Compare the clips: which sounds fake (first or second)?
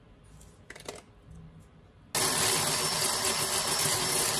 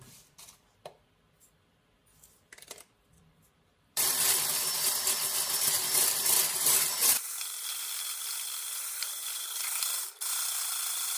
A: second